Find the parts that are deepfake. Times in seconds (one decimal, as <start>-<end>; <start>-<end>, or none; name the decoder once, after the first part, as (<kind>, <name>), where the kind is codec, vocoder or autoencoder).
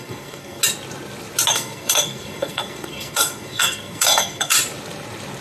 0.0-0.6 (codec, SNAC); 1.5-4.5